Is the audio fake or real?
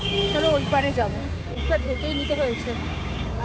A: fake